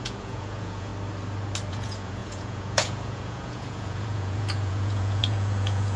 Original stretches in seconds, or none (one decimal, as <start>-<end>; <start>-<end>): 0.9-1.7